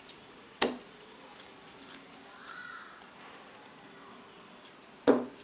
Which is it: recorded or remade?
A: recorded